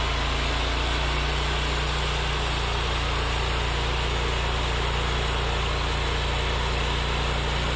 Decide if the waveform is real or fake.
real